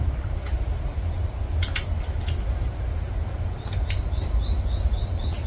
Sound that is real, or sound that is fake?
real